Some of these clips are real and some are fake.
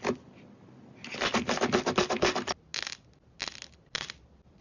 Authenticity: real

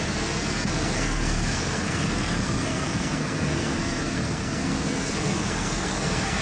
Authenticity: fake